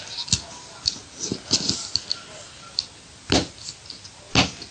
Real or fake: real